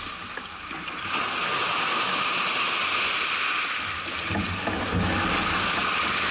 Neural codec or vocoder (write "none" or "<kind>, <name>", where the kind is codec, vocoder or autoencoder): none